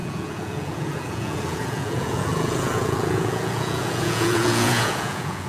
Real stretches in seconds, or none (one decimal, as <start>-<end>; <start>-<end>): none